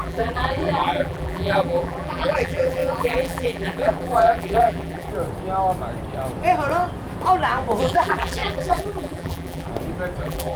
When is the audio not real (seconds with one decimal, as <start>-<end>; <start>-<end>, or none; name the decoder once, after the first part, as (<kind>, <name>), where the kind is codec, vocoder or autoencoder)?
0.0-5.1 (vocoder, BigVGAN v2); 7.8-9.7; 10.2-10.6